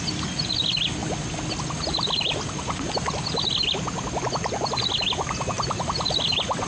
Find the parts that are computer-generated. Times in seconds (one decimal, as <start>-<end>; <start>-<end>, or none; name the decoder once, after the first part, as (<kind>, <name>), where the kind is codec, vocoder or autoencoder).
none